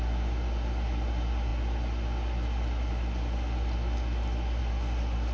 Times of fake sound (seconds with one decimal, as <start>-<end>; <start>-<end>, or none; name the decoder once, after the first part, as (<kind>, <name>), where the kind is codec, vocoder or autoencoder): none

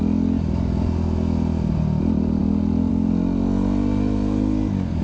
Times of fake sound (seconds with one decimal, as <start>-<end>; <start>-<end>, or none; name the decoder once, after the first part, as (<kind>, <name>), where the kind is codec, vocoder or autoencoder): none